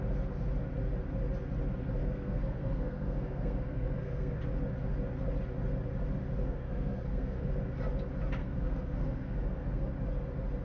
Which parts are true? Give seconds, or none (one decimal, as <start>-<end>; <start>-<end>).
0.0-2.0; 4.4-6.4; 7.5-8.4; 9.9-10.6